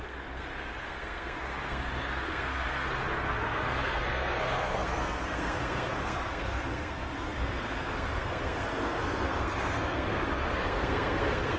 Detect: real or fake fake